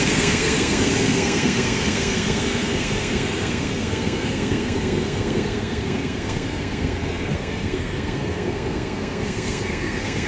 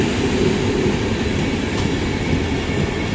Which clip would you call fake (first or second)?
first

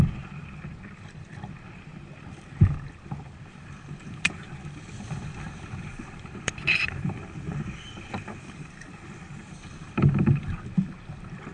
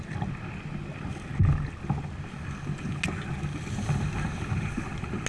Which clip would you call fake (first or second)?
first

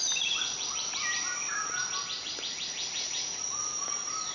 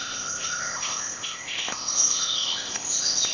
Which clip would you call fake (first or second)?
second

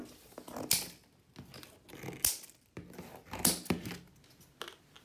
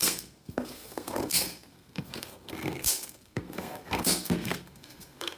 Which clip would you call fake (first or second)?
second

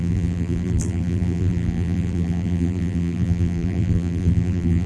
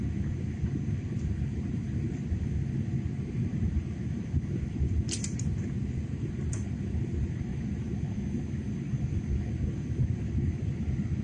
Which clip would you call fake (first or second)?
first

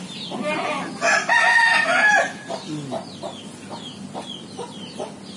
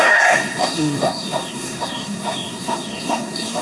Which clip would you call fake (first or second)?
second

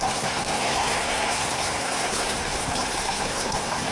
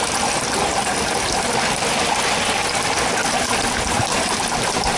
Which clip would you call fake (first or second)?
first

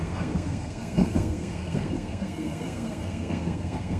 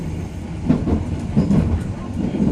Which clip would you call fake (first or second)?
first